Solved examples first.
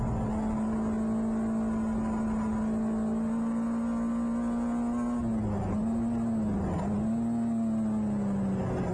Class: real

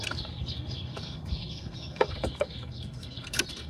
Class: fake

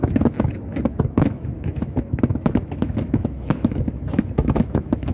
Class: fake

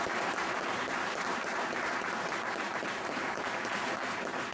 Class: fake